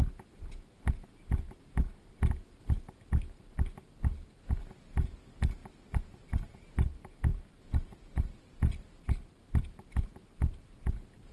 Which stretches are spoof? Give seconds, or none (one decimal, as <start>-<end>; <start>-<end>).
none